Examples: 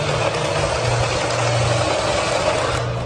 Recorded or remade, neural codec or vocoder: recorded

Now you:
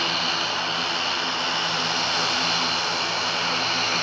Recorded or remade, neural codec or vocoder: recorded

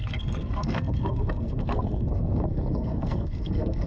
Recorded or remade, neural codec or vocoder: remade, codec, SNAC